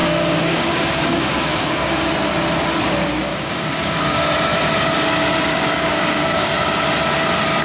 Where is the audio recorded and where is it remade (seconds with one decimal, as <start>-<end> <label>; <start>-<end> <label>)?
0.0-2.1 remade; 2.1-3.3 recorded; 3.3-4.3 remade; 4.3-5.5 recorded; 5.5-6.5 remade; 6.5-7.6 recorded